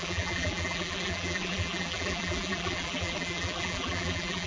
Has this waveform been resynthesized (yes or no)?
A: yes